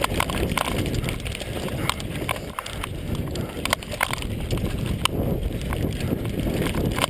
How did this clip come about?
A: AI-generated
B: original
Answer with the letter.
B